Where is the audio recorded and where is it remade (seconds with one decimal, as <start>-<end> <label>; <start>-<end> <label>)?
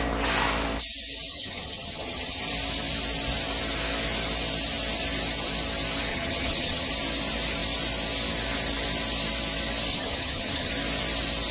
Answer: 0.0-1.3 recorded; 1.3-2.4 remade; 2.4-6.1 recorded; 6.1-6.9 remade; 6.9-9.9 recorded; 9.9-10.7 remade; 10.7-11.5 recorded